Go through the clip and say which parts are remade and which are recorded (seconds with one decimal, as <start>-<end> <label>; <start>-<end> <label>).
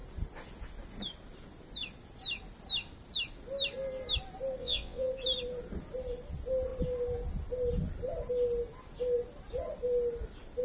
0.0-4.6 recorded; 4.6-5.1 remade; 5.1-10.6 recorded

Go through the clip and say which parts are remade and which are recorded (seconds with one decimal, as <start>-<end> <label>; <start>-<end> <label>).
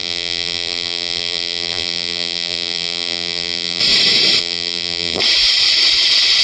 0.0-3.8 remade; 3.8-4.4 recorded; 4.4-5.2 remade; 5.2-6.4 recorded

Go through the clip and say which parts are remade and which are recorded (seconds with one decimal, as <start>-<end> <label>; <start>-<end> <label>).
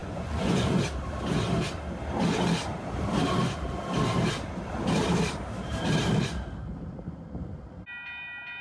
0.0-0.8 remade; 0.8-8.6 recorded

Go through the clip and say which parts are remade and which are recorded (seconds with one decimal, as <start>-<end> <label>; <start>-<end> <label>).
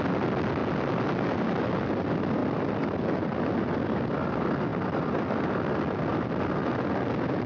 0.0-2.4 recorded; 2.4-3.2 remade; 3.2-4.7 recorded; 4.7-5.4 remade; 5.4-6.1 recorded; 6.1-6.6 remade; 6.6-7.5 recorded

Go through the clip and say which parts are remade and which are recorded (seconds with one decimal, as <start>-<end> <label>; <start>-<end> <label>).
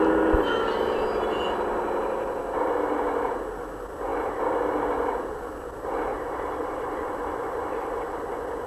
0.0-6.1 recorded; 6.1-7.1 remade; 7.1-8.7 recorded